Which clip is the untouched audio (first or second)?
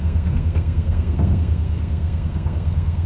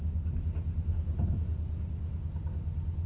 second